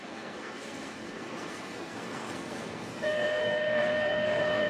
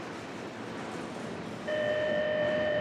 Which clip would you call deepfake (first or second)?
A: first